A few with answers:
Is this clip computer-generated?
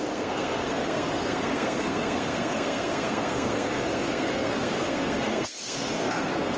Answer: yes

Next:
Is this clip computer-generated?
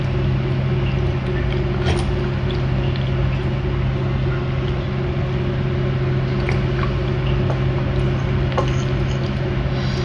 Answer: no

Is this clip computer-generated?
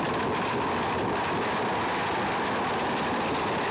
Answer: no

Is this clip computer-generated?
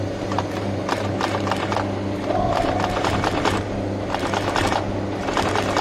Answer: no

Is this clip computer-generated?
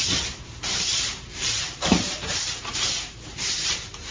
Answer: yes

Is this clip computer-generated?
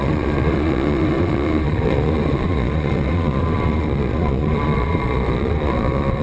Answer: yes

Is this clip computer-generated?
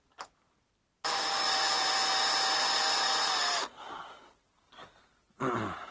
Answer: no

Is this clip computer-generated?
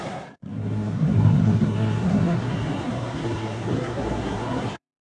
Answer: yes